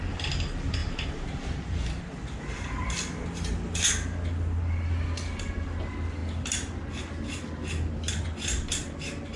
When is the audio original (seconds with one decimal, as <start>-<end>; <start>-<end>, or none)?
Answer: 0.0-0.8; 2.4-9.4